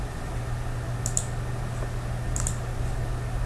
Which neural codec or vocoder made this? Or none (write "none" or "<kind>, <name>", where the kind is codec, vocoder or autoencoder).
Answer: none